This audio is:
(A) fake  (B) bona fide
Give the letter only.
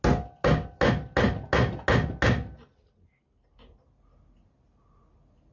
B